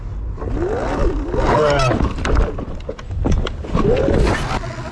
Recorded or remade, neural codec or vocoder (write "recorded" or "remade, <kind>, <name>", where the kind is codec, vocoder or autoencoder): recorded